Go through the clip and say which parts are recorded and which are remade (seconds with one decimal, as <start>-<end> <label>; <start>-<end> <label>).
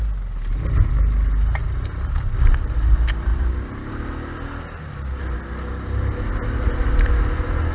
0.0-7.7 recorded